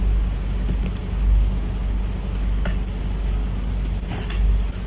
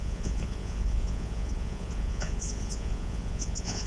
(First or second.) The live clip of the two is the first